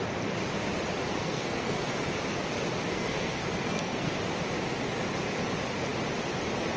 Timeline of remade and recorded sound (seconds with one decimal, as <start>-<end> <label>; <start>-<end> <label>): 0.0-1.1 recorded; 1.1-2.0 remade; 2.0-2.9 recorded; 2.9-4.1 remade; 4.1-6.8 recorded